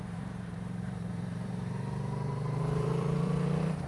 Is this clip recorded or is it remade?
remade